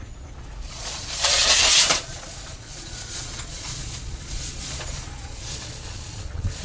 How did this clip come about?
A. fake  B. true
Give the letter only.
A